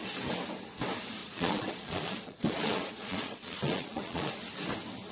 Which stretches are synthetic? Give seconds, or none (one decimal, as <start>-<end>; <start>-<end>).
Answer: 1.2-4.3